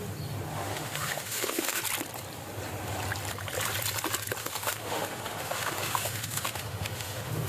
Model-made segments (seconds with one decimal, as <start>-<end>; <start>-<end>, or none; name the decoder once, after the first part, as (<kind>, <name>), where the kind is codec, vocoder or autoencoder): 0.5-1.8 (autoencoder, DAC-VAE); 4.4-7.5